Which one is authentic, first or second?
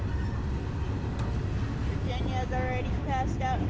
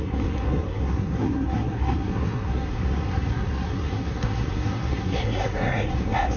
first